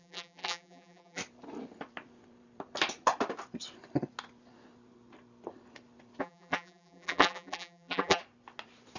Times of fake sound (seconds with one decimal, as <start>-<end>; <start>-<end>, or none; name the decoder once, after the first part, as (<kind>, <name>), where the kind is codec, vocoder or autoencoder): 0.0-1.2 (vocoder, BigVGAN v2); 6.2-8.2